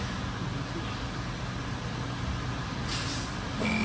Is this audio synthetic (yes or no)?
no